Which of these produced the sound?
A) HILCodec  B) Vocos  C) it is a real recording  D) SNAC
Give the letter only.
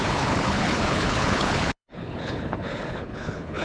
A